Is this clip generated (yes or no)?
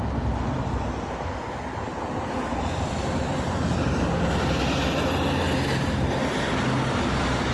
no